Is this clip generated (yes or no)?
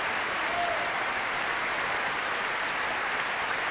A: no